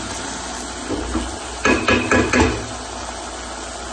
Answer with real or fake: real